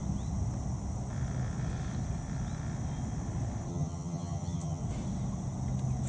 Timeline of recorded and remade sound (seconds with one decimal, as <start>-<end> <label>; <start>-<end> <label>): 0.0-3.7 recorded; 3.7-4.8 remade; 4.8-6.1 recorded